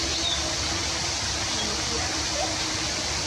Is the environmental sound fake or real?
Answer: real